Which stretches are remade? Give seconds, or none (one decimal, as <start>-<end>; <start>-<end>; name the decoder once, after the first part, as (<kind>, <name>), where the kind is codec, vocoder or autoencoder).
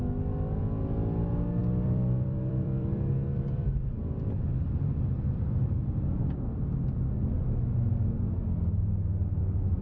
1.6-3.6 (vocoder, BigVGAN v2)